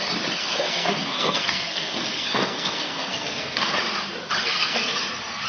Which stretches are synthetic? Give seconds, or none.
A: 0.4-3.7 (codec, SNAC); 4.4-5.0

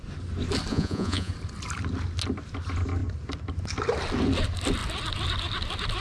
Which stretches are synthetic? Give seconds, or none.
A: 0.7-1.3 (vocoder, Vocos)

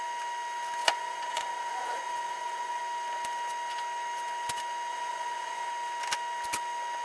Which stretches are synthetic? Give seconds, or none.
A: 0.8-2.8 (vocoder, Vocos); 4.9-5.7